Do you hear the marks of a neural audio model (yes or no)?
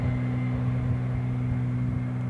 no